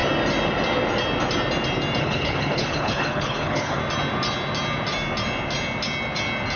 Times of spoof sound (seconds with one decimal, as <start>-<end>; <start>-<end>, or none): 2.0-3.8